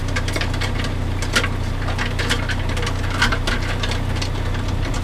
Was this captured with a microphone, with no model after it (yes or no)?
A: yes